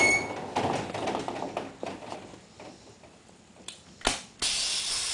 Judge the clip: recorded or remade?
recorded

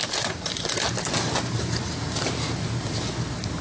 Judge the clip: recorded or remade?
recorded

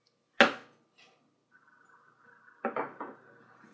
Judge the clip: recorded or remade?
recorded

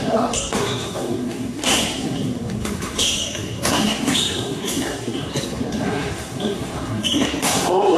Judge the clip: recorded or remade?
remade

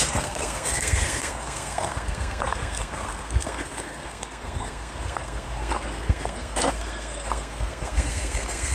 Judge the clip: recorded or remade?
remade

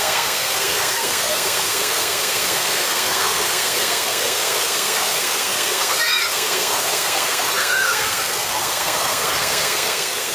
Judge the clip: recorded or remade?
remade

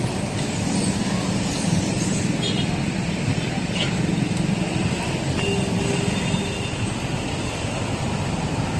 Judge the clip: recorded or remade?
recorded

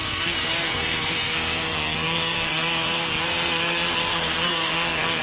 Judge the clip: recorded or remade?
remade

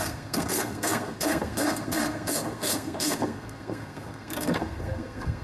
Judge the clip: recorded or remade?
remade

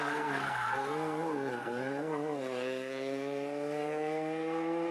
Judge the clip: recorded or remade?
remade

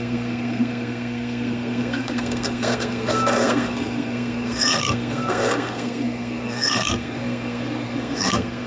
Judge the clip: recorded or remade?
remade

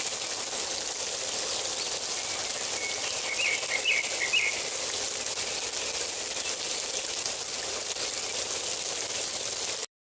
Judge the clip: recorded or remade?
recorded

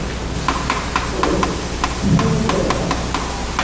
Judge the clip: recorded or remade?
recorded